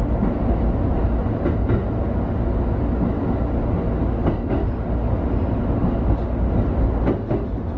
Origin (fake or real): real